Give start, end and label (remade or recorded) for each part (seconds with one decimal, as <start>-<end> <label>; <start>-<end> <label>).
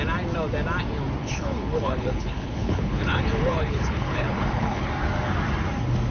0.0-1.2 recorded; 1.2-4.9 remade; 4.9-6.1 recorded